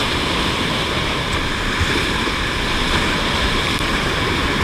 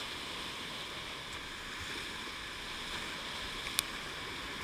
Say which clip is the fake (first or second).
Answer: first